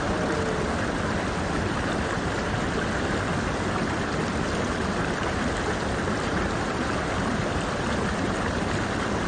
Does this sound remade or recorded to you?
recorded